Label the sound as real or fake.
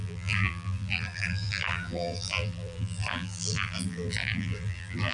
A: fake